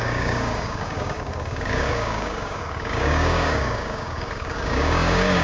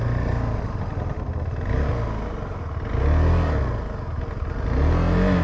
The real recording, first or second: second